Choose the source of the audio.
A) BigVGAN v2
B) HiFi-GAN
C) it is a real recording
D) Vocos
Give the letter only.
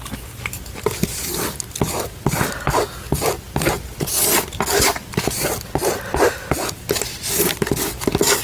C